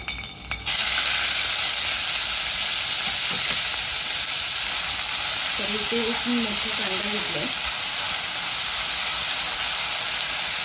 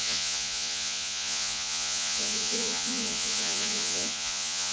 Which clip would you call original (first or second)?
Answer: first